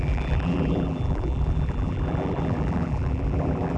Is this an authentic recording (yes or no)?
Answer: no